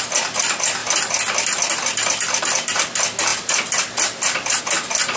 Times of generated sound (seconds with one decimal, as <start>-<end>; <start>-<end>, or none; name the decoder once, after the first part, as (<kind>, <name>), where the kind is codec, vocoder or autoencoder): 3.3-4.6 (vocoder, BigVGAN v2)